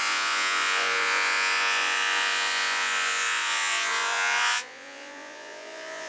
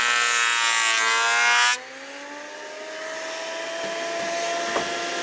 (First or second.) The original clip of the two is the second